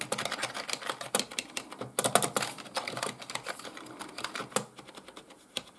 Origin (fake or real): real